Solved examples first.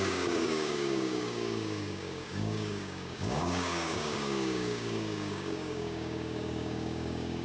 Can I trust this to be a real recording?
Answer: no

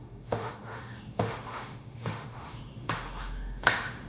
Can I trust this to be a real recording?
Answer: no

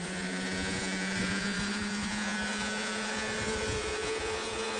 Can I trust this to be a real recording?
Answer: no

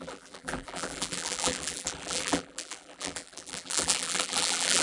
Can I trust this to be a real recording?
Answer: no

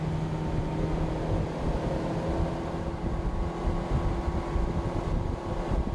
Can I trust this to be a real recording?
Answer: yes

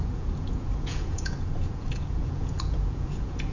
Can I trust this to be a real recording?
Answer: no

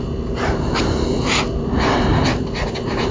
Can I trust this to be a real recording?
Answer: yes